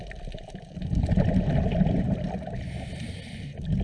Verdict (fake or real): real